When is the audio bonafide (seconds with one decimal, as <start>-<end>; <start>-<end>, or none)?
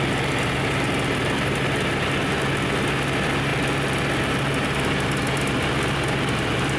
0.0-6.8